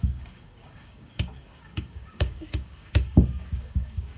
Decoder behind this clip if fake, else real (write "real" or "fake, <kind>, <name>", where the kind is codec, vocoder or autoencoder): fake, codec, DAC